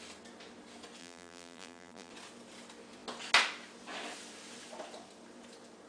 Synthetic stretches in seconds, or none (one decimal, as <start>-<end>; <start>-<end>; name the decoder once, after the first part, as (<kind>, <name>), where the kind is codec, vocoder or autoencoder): 1.0-2.1 (vocoder, BigVGAN v2)